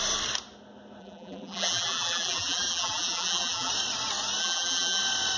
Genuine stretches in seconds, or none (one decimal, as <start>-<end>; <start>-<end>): 0.0-1.0; 3.7-4.4; 5.0-5.4